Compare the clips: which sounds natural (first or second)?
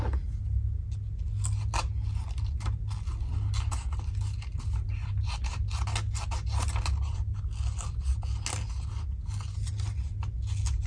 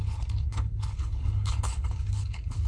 first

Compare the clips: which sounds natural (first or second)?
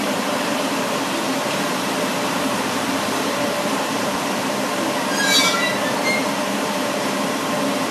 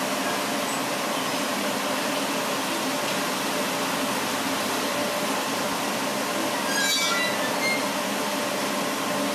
second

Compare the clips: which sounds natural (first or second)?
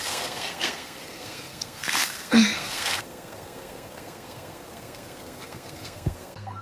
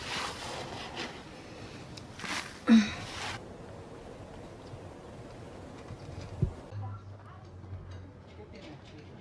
second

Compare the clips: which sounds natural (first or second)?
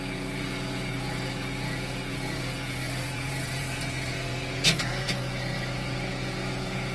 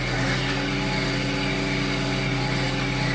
second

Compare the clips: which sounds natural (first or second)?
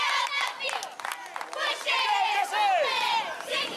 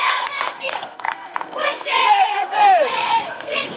first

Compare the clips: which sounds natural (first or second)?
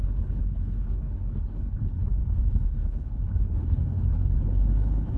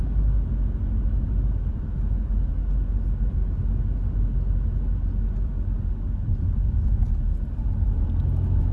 second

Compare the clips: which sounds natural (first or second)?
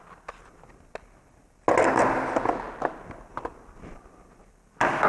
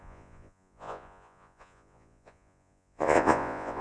first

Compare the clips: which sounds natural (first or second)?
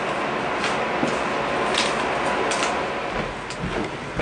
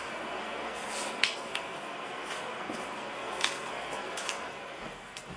first